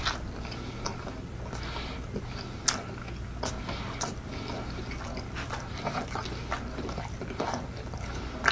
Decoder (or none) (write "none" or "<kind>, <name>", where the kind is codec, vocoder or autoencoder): none